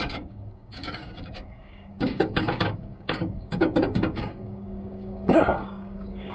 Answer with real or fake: fake